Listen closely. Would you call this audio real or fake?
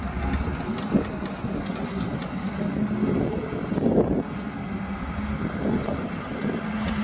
real